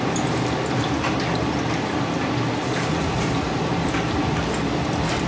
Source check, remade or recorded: recorded